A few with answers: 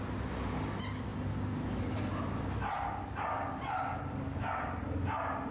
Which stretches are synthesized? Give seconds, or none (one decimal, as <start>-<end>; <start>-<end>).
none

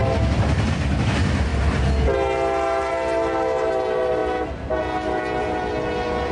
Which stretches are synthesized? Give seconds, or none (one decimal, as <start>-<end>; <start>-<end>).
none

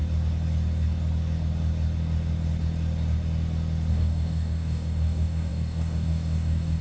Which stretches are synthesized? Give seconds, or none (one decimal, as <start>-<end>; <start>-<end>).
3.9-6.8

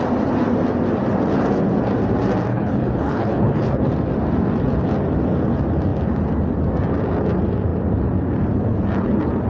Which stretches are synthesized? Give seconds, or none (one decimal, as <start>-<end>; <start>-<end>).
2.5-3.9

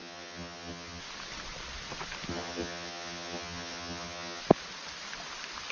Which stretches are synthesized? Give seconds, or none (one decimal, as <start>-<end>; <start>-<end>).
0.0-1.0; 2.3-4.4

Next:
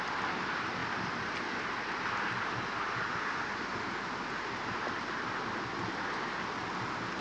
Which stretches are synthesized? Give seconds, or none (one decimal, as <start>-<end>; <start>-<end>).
none

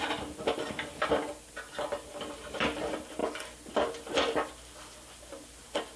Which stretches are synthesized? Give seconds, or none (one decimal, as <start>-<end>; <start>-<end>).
none

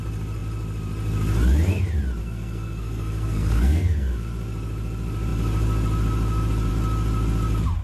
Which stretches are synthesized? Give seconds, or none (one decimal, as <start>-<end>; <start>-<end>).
2.2-4.3